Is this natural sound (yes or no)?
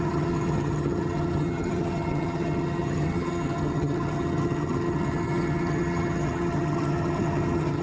no